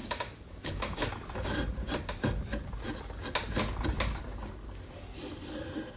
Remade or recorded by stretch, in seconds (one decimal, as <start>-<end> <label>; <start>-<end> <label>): 0.0-1.1 remade; 1.1-6.0 recorded